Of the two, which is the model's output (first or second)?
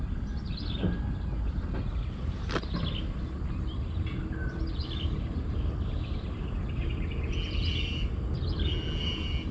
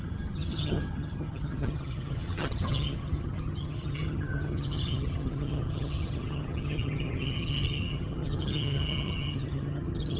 second